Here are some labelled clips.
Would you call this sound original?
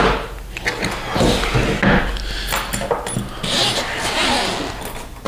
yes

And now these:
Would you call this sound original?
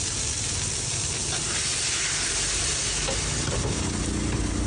yes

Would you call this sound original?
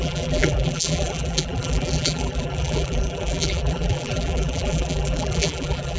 no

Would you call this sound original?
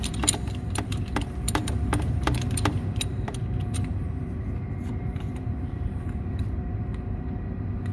no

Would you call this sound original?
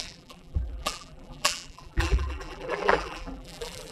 no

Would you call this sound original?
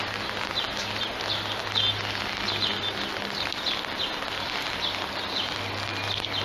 yes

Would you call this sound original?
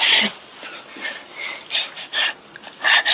yes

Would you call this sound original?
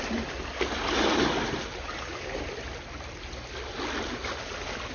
yes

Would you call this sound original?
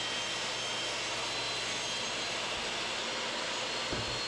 yes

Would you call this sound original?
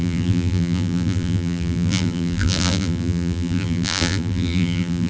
no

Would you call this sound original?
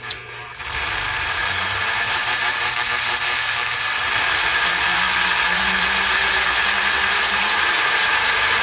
no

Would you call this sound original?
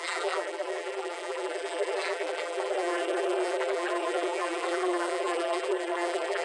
no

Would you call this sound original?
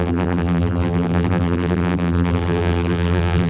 no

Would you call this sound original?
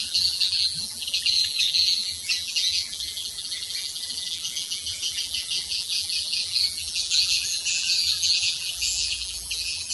no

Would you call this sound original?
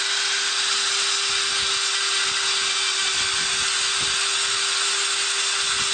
yes